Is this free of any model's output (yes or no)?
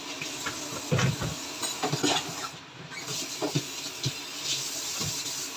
yes